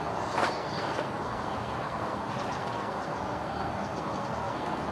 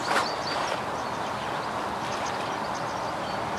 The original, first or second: second